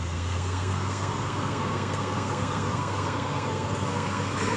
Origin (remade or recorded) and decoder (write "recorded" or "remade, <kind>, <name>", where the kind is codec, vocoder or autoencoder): remade, codec, SNAC